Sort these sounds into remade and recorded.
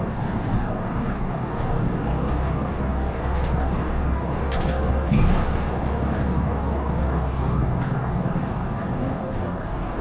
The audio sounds remade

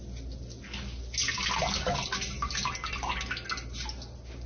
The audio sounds recorded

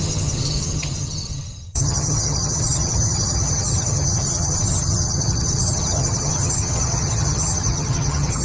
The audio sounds remade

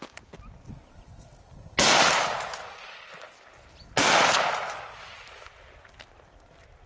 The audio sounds recorded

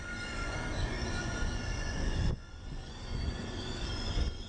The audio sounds remade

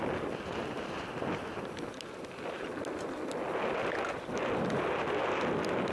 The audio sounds recorded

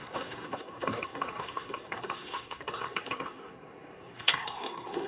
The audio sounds remade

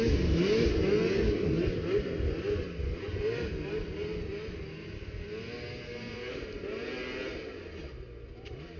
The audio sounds recorded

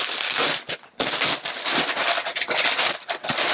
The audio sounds recorded